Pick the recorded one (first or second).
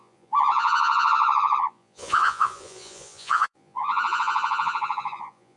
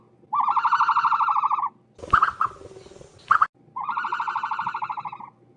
second